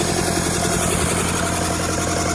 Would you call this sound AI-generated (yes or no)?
no